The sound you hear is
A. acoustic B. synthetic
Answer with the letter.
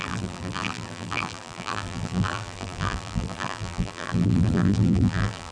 B